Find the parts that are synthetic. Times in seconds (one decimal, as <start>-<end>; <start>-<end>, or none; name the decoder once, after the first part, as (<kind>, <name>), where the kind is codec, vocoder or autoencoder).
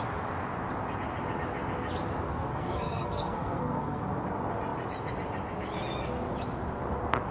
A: 2.3-4.0 (codec, SNAC)